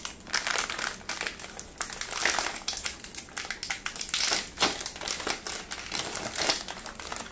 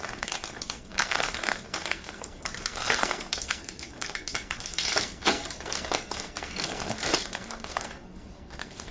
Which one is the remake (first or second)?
second